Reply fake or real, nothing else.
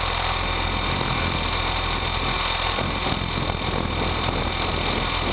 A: real